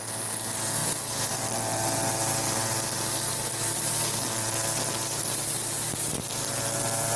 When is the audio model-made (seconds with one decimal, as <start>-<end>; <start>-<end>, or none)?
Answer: none